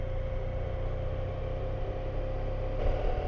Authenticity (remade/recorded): recorded